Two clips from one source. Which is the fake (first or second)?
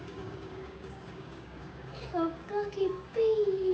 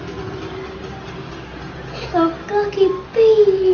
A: first